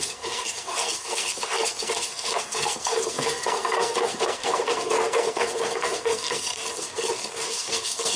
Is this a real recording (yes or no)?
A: no